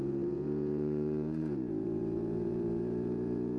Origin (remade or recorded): remade